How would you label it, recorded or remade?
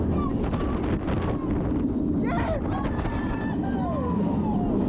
recorded